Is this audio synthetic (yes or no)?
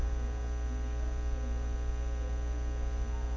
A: no